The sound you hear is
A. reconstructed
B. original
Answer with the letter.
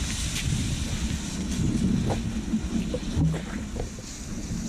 B